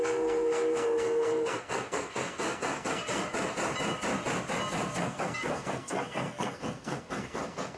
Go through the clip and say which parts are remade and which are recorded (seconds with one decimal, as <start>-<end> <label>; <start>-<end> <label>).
0.0-3.2 remade; 3.2-5.0 recorded; 5.0-7.8 remade